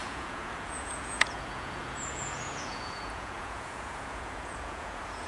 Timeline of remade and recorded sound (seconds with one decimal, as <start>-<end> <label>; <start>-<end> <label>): 0.0-5.3 remade